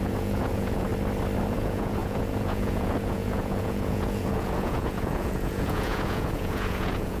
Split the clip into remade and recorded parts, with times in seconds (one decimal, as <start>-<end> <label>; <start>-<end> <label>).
0.0-0.9 remade; 0.9-1.5 recorded; 1.5-7.2 remade

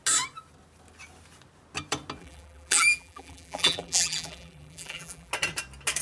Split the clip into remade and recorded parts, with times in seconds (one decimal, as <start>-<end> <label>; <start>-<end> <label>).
0.0-2.2 recorded; 2.2-5.3 remade; 5.3-6.0 recorded